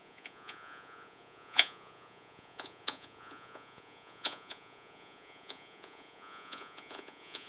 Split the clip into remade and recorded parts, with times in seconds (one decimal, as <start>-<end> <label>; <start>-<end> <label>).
0.0-7.5 remade